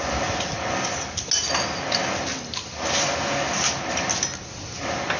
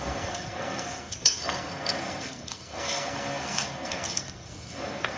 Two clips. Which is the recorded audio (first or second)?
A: first